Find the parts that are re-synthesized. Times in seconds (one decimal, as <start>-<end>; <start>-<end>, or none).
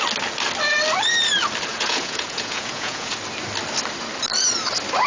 1.7-3.1